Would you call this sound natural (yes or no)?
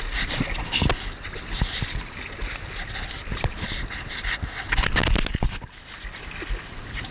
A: yes